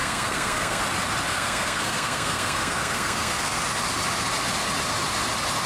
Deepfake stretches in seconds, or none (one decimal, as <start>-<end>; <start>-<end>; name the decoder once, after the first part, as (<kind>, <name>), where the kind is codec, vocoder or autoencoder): 0.0-0.8 (codec, SNAC); 1.3-3.6